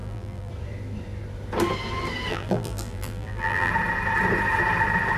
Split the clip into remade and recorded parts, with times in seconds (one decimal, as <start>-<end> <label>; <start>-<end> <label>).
0.0-0.5 remade; 0.5-2.3 recorded; 2.3-3.7 remade; 3.7-5.2 recorded